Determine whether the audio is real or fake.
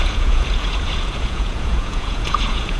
fake